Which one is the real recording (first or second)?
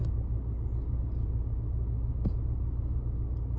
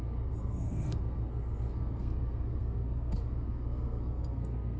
first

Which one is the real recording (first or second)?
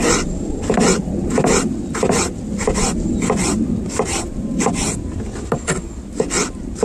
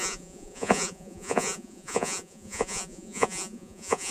first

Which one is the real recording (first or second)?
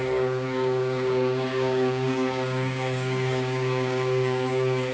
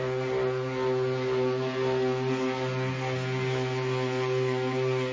second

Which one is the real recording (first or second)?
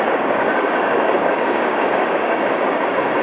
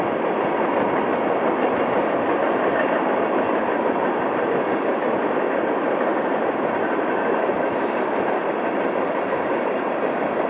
second